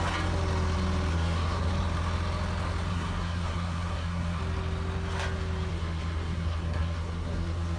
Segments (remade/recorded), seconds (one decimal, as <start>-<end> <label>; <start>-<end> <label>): 0.0-1.1 recorded; 1.1-1.7 remade; 1.7-2.9 recorded; 2.9-4.4 remade; 4.4-5.7 recorded; 5.7-7.8 remade